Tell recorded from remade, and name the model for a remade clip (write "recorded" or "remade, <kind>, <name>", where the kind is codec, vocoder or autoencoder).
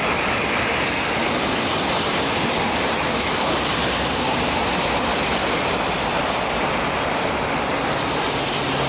recorded